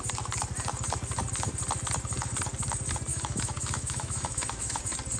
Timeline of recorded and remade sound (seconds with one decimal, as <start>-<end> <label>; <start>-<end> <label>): 0.0-3.1 recorded; 3.1-4.8 remade; 4.8-5.2 recorded

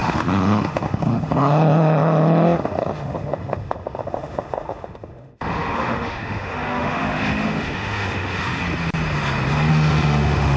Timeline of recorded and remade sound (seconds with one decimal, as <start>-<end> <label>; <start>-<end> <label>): 0.0-8.6 remade; 8.6-9.7 recorded; 9.7-10.6 remade

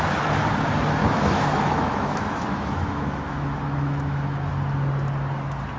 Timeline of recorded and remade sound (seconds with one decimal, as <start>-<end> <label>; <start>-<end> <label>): 0.0-1.0 recorded; 1.0-4.5 remade; 4.5-5.8 recorded

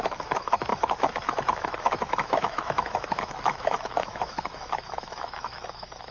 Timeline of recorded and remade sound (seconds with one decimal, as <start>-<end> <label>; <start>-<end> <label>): 0.0-6.1 remade

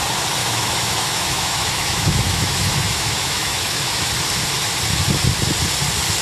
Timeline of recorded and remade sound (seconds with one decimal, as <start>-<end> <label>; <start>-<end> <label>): 0.0-0.4 recorded; 0.4-4.1 remade; 4.1-6.2 recorded